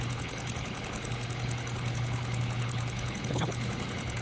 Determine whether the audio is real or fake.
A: fake